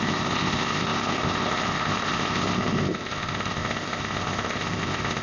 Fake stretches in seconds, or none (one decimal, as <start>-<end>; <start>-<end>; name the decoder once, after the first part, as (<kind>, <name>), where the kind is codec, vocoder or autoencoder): 0.0-5.2 (codec, ZipCodec)